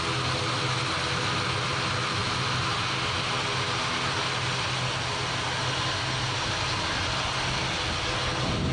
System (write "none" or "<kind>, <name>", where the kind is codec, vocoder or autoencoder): none